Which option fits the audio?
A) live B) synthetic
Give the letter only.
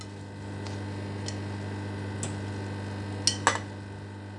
A